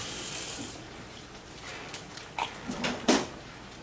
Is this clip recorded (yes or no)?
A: yes